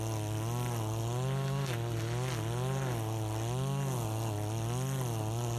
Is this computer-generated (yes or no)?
no